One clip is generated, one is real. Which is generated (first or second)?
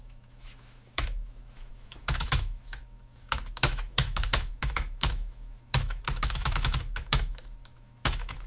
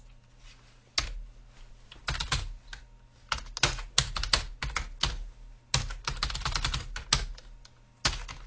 first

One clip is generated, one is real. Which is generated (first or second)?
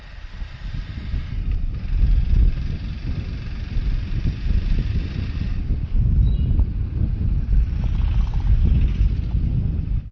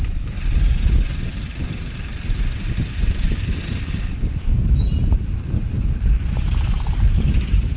second